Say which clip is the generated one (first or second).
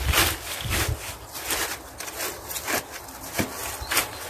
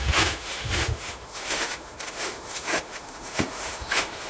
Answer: second